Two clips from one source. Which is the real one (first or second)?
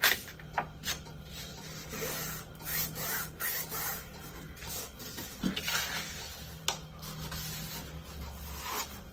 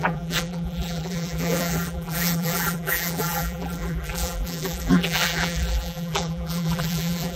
first